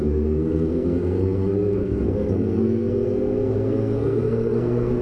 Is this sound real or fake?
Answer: fake